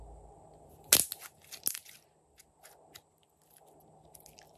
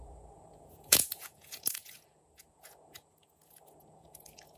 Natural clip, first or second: first